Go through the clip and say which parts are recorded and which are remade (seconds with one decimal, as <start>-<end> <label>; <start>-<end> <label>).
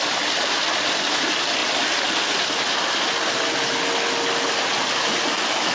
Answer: 0.0-5.7 recorded